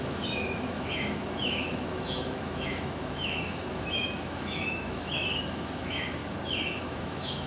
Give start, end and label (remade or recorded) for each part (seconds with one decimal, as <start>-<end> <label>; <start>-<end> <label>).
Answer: 0.0-6.2 remade; 6.2-6.8 recorded; 6.8-7.5 remade